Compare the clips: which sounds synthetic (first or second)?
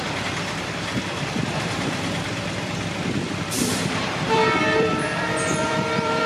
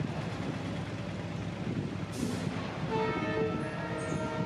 first